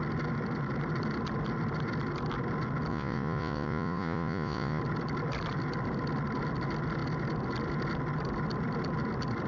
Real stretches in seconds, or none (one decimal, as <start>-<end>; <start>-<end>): 0.0-2.9; 4.8-9.5